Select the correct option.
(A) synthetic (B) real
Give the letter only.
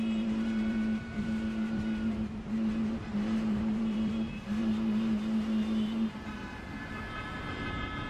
A